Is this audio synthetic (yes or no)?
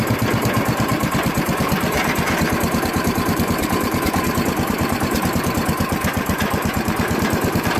yes